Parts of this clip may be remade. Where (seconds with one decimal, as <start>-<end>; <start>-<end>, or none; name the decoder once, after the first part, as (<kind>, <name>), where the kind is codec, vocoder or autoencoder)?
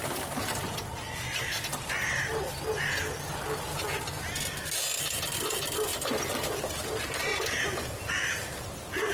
7.3-9.1 (vocoder, BigVGAN v2)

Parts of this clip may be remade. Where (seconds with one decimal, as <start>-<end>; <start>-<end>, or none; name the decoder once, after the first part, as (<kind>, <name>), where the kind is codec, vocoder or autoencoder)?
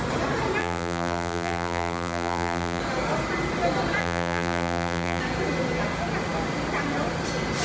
0.6-2.8 (vocoder, BigVGAN v2); 4.0-5.2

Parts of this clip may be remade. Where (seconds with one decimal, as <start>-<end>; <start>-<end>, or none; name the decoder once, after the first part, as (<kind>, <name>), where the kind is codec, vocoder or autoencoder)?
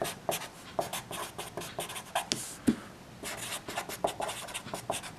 0.0-0.9 (vocoder, BigVGAN v2); 3.9-5.2